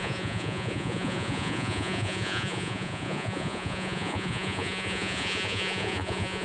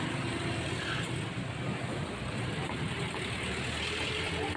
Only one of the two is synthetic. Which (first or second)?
first